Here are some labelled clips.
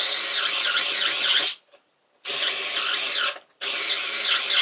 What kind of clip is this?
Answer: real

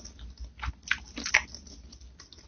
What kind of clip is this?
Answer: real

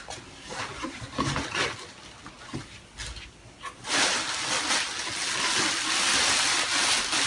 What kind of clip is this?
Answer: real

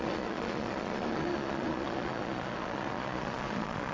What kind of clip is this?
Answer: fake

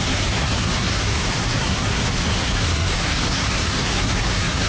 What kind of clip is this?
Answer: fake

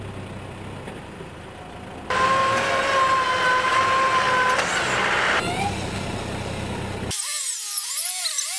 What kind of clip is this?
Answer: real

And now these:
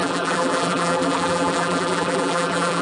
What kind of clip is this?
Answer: fake